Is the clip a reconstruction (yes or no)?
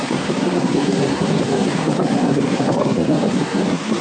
yes